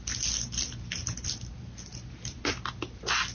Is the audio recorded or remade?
recorded